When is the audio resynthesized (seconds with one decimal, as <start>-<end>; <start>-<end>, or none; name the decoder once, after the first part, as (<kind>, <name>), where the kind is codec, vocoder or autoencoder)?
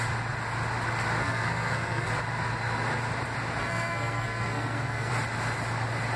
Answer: 1.2-2.1 (codec, SNAC); 3.6-5.1